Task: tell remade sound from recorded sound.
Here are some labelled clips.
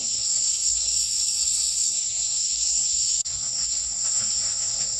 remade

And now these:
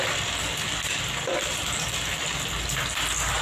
recorded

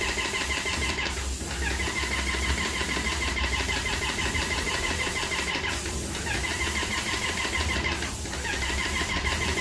recorded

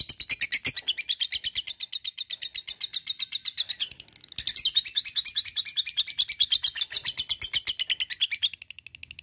recorded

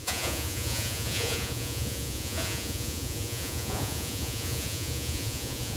remade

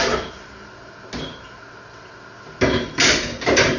recorded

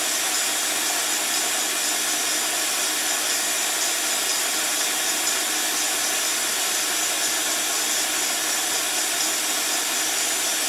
recorded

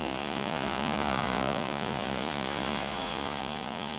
remade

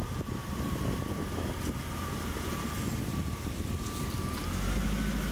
recorded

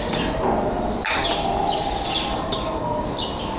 recorded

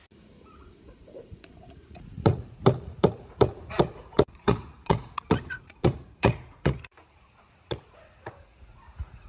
remade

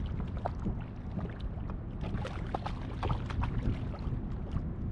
recorded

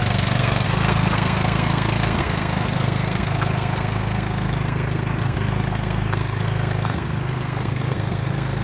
remade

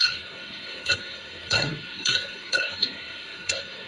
remade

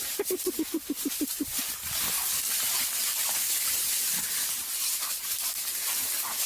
remade